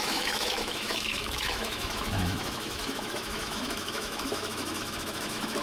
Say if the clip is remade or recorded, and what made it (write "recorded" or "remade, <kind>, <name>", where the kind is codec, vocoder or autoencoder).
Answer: remade, autoencoder, DAC-VAE